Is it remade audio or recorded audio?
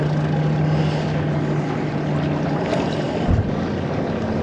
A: recorded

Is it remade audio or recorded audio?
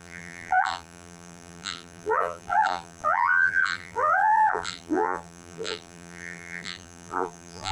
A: remade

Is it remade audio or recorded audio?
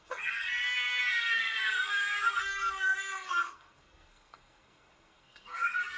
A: remade